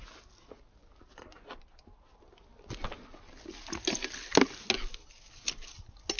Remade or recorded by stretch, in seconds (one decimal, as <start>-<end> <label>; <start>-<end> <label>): 0.0-6.2 recorded